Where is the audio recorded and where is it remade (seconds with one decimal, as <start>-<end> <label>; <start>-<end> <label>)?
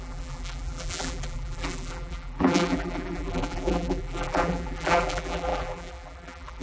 0.0-6.6 remade